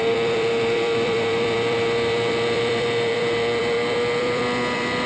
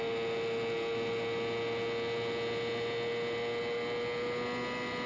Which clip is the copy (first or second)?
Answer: first